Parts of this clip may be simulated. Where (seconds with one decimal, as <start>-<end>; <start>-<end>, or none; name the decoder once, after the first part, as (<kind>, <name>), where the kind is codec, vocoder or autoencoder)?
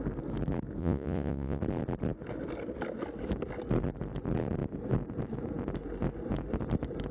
0.8-1.6 (vocoder, Vocos)